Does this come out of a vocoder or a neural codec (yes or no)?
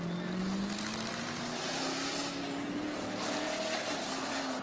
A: no